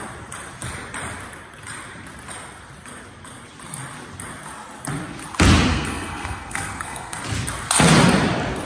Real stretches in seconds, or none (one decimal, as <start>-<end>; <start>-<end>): 0.0-5.7; 7.2-8.6